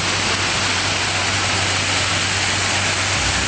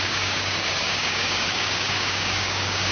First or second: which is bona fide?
first